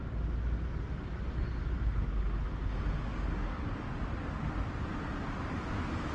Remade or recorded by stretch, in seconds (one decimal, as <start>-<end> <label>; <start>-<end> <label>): 0.0-3.1 recorded; 3.1-3.9 remade; 3.9-6.1 recorded